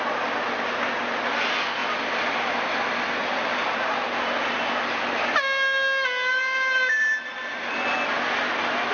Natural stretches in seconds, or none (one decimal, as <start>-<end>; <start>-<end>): 0.0-3.2; 3.9-8.9